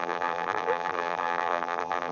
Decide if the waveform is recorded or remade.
remade